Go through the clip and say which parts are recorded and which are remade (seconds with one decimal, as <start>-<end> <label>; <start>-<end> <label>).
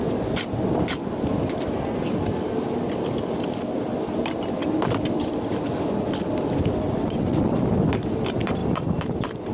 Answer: 0.0-7.0 recorded; 7.0-7.5 remade; 7.5-9.5 recorded